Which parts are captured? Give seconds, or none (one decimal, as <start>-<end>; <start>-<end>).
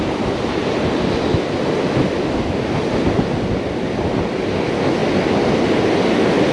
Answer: 0.0-6.5